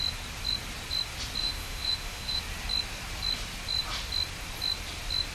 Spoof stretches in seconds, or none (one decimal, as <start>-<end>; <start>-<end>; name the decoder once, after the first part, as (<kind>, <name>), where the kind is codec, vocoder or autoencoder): 1.4-2.4 (autoencoder, DAC-VAE)